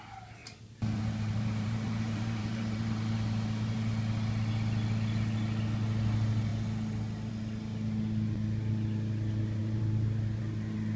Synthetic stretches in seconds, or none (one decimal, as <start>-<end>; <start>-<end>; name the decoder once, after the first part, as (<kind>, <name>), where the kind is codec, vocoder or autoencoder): 0.4-3.9 (vocoder, BigVGAN v2); 9.6-10.4